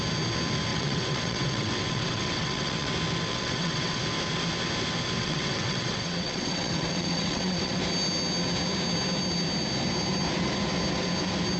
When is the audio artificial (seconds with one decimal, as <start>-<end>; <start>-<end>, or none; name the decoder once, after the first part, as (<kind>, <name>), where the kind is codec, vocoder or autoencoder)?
0.7-2.9 (vocoder, WaveNeXt); 3.3-4.0; 5.2-7.8